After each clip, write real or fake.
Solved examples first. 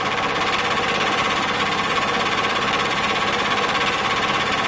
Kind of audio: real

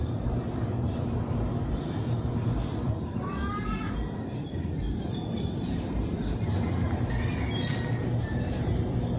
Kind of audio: fake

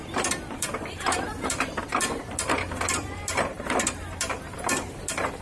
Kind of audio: fake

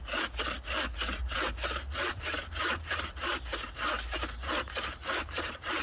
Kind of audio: fake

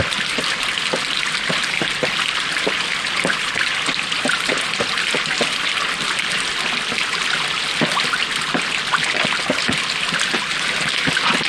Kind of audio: real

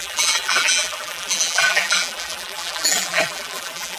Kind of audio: fake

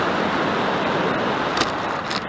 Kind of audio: real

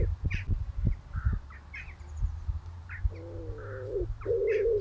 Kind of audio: real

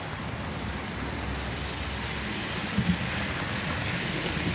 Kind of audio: real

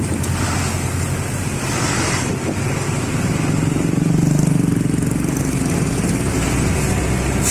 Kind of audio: real